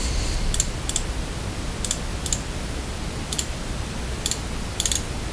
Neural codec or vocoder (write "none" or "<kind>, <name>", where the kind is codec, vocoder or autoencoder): none